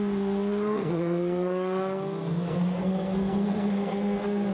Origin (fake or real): fake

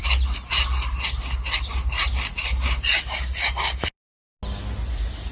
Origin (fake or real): real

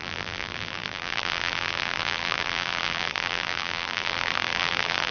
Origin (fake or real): fake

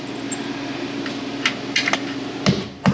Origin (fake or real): real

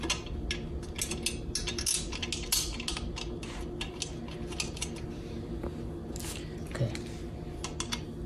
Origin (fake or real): real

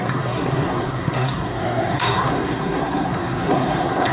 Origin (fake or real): fake